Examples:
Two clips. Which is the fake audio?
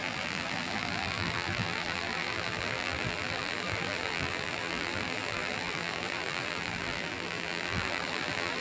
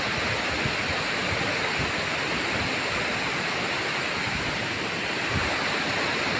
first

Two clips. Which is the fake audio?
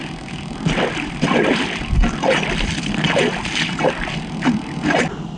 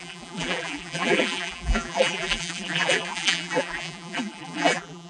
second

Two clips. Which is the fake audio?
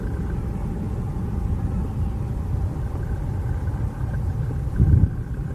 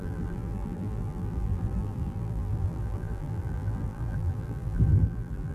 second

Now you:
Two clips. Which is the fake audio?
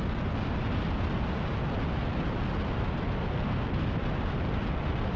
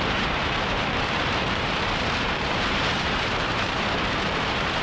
second